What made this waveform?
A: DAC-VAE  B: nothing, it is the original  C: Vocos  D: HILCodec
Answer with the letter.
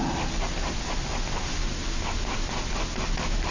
B